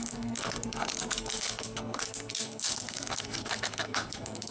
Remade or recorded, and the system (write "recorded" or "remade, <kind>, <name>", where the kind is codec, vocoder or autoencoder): remade, codec, SNAC